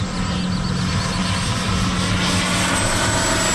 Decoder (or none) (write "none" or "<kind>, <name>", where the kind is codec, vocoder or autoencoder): none